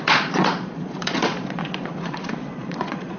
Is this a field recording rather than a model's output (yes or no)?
no